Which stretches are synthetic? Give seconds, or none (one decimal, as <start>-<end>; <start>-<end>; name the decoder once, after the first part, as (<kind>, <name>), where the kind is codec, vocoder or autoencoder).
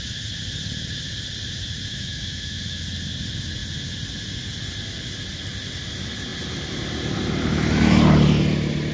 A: 1.9-2.8 (autoencoder, DAC-VAE)